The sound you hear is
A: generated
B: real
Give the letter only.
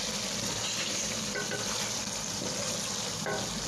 B